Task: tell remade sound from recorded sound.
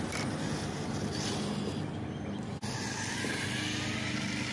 recorded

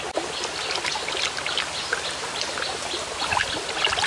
recorded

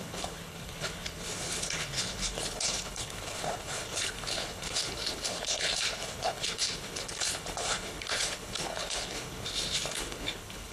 remade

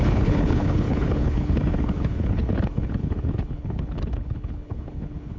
remade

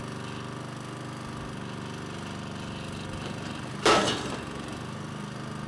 recorded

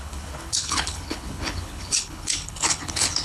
remade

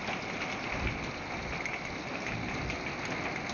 recorded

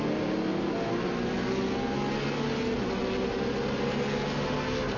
recorded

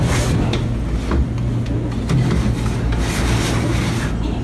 recorded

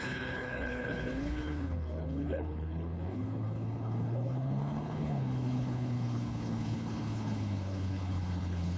remade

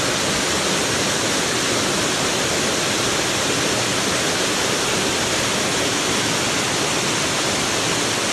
recorded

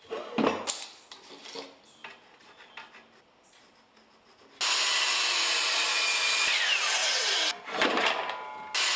recorded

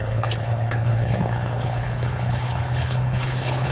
remade